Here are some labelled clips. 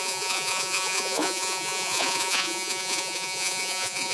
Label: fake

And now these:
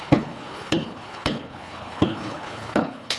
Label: fake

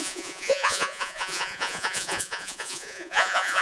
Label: fake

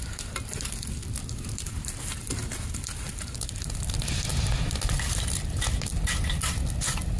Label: real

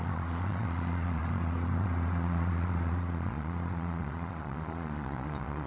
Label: fake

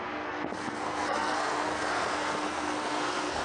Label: fake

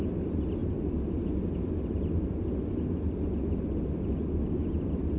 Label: real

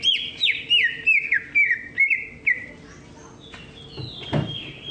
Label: real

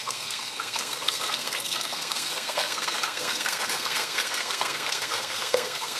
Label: fake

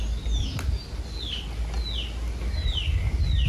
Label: real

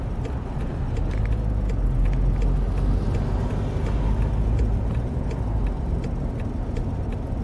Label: real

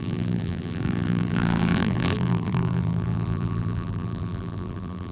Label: fake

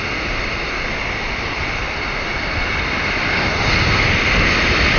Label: real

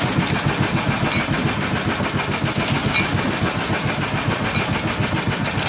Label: real